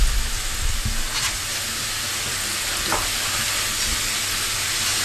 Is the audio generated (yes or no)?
no